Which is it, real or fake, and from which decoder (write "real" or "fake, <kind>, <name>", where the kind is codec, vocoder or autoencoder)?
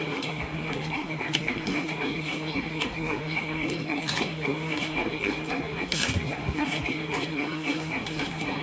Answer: fake, codec, SNAC